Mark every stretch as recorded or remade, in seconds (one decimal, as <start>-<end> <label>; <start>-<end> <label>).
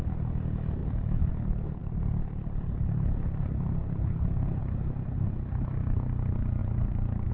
0.0-0.8 recorded; 0.8-1.3 remade; 1.3-1.8 recorded; 1.8-4.6 remade; 4.6-6.6 recorded; 6.6-7.3 remade